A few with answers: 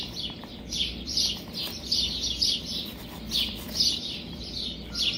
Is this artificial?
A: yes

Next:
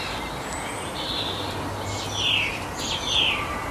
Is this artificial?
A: no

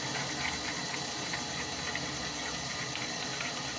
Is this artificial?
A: no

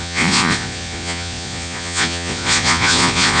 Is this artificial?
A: yes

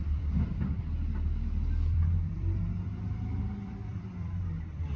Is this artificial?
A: yes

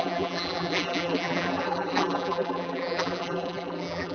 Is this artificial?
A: yes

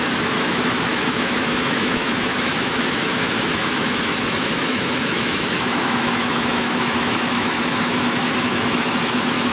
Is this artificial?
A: yes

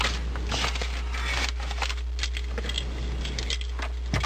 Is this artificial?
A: no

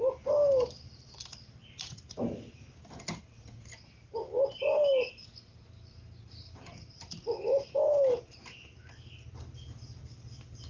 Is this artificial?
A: no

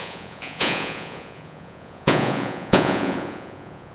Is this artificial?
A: yes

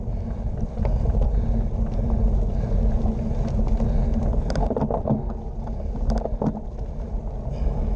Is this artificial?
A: no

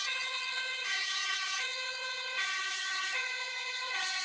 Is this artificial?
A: yes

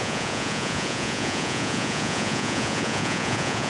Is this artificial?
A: yes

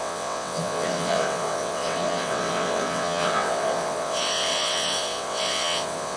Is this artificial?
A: yes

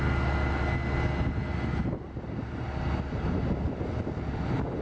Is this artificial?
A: no